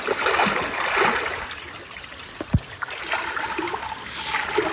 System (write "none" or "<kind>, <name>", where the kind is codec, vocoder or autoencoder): none